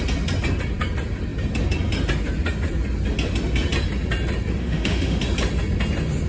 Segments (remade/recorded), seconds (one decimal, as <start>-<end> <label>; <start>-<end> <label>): 0.0-4.6 recorded; 4.6-5.2 remade; 5.2-6.3 recorded